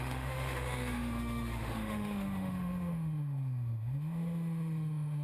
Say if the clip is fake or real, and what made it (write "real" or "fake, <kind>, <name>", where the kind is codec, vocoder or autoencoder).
fake, autoencoder, DAC-VAE